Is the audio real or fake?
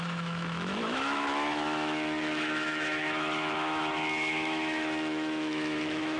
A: fake